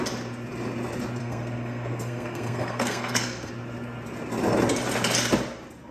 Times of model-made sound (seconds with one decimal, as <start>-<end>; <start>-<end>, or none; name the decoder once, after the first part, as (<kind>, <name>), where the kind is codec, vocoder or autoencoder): 1.2-3.5 (codec, SNAC)